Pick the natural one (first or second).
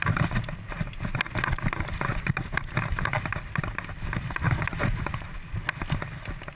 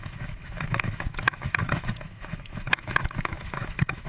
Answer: first